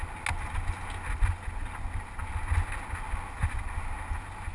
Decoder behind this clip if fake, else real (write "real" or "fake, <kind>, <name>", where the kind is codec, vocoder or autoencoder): real